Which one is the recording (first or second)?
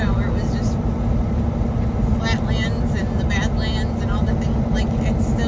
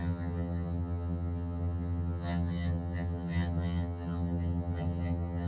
first